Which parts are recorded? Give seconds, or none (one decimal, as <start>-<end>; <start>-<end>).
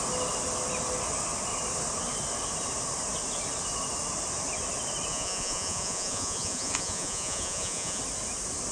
0.0-5.1; 8.0-8.7